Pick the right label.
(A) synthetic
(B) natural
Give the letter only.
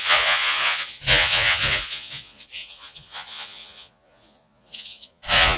A